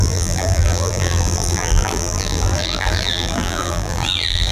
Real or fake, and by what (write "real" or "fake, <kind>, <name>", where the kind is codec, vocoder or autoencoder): fake, vocoder, BigVGAN v2